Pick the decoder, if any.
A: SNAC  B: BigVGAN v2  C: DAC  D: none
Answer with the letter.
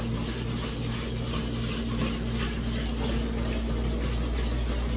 D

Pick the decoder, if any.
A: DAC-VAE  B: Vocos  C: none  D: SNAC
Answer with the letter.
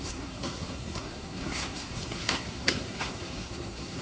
D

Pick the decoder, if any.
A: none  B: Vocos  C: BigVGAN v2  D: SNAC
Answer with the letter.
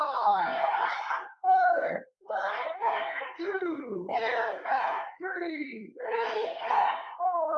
D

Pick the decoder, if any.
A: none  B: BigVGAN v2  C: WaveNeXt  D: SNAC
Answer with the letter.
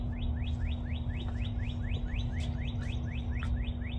A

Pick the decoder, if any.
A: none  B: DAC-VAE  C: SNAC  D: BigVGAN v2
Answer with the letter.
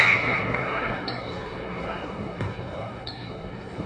C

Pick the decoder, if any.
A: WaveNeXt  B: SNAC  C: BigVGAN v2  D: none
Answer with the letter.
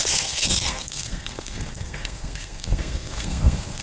B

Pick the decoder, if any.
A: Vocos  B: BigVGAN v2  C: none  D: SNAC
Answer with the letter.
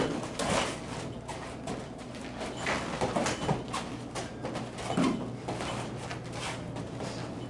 C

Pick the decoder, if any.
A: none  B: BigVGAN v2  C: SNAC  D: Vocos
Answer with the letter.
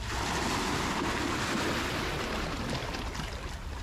A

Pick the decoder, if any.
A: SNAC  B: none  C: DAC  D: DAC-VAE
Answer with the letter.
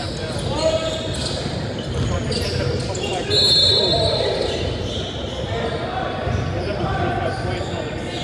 B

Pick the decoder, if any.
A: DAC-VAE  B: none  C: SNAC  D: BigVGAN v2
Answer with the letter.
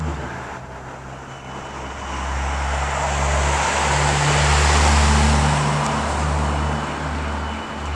B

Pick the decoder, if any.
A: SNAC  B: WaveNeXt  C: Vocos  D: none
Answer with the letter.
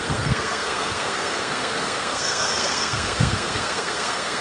A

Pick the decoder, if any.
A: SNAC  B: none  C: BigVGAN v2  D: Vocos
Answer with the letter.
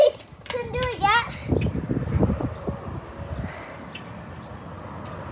B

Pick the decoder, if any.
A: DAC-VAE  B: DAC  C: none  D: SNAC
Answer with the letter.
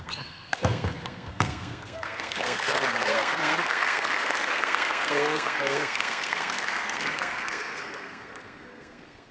D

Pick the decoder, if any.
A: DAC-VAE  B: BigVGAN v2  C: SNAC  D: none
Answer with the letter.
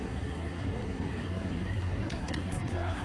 C